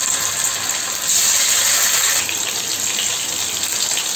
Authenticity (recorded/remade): recorded